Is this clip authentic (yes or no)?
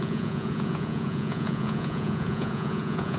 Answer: no